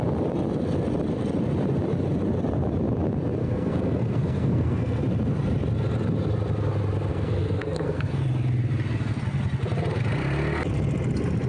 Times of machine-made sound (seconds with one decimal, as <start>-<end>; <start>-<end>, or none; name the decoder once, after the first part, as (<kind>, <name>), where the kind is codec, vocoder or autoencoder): 3.4-5.0 (codec, SNAC); 7.1-8.2